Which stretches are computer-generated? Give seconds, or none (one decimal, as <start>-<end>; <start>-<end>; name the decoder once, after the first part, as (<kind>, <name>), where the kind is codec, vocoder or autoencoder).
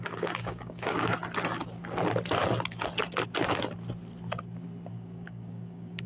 0.0-1.2 (codec, DAC); 4.9-6.1